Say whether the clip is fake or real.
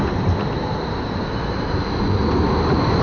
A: real